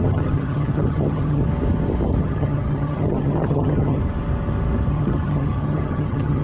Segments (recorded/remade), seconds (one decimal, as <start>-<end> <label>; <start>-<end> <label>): 0.0-1.4 remade; 1.4-2.2 recorded; 2.2-4.0 remade; 4.0-4.9 recorded; 4.9-6.4 remade